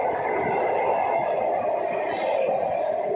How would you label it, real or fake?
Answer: real